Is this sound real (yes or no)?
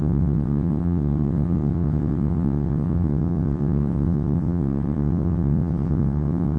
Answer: no